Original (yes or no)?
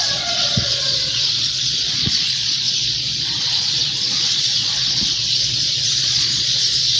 no